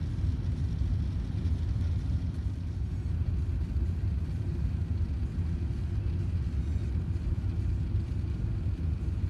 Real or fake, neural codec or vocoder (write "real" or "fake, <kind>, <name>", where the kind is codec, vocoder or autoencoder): real